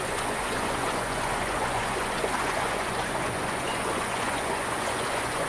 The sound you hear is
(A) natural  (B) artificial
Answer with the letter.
B